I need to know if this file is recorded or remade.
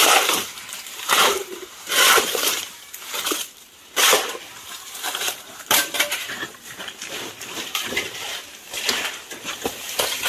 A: remade